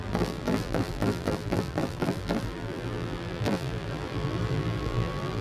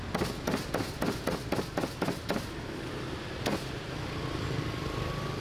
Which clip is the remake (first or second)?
first